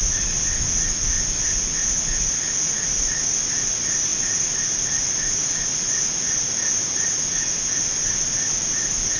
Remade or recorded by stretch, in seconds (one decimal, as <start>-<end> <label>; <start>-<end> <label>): 0.0-9.2 remade